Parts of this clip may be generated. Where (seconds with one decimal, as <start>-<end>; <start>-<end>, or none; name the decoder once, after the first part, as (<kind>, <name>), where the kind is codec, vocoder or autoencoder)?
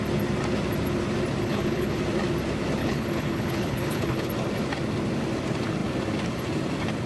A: 1.4-2.0 (codec, HILCodec); 2.8-4.3